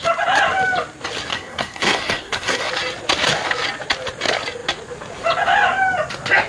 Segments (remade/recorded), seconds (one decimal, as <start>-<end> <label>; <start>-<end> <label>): 0.0-1.3 recorded; 1.3-2.7 remade; 2.7-6.5 recorded